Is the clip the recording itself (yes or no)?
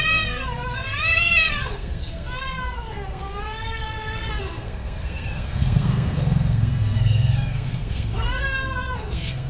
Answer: no